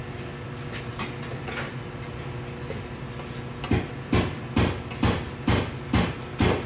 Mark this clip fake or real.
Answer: real